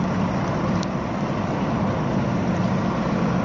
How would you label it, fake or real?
fake